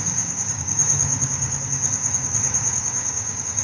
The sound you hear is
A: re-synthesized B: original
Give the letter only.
A